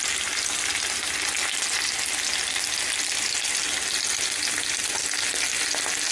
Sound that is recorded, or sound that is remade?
recorded